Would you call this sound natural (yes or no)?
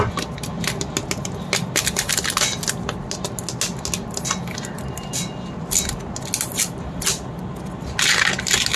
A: yes